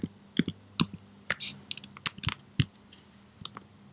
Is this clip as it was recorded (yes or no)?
yes